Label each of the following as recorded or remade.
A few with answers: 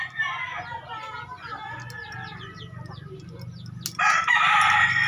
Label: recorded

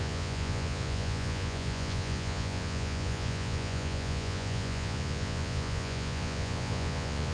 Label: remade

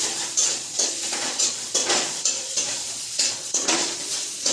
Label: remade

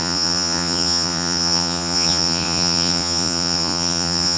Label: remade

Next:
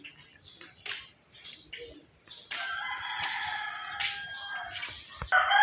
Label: recorded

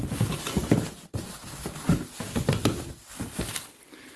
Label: recorded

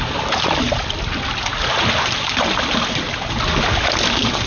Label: recorded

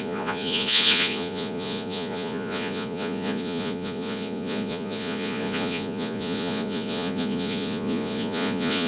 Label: remade